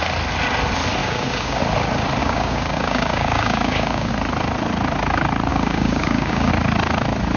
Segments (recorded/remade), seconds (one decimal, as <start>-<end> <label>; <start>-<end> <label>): 0.0-1.0 recorded; 1.0-1.6 remade; 1.6-2.2 recorded; 2.2-4.1 remade; 4.1-5.5 recorded; 5.5-6.5 remade; 6.5-7.4 recorded

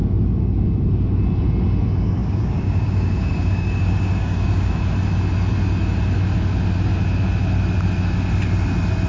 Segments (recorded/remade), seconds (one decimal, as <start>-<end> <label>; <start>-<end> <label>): 0.0-2.2 recorded; 2.2-4.7 remade; 4.7-9.1 recorded

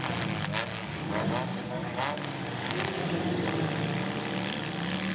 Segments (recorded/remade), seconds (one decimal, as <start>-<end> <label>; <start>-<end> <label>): 0.0-0.5 recorded; 0.5-1.1 remade; 1.1-1.6 recorded; 1.6-3.3 remade; 3.3-5.1 recorded

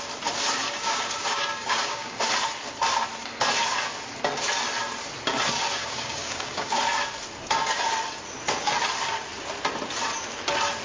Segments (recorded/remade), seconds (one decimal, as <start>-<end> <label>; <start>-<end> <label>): 0.0-0.6 recorded; 0.6-2.2 remade; 2.2-5.8 recorded; 5.8-6.7 remade; 6.7-10.8 recorded

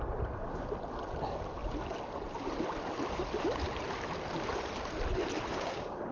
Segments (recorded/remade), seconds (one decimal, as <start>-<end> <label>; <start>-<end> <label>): 0.0-5.5 recorded; 5.5-6.1 remade

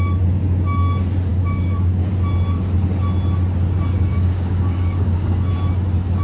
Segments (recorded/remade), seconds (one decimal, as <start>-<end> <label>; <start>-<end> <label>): 0.0-1.3 recorded; 1.3-2.1 remade; 2.1-3.9 recorded; 3.9-5.5 remade; 5.5-6.2 recorded

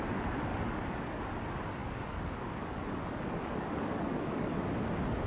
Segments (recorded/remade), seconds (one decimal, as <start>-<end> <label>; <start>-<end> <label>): 0.0-0.5 recorded; 0.5-1.2 remade; 1.2-1.8 recorded; 1.8-4.7 remade; 4.7-5.3 recorded

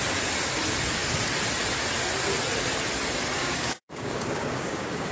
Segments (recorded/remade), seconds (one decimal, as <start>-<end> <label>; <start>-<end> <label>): 0.0-3.4 recorded; 3.4-5.1 remade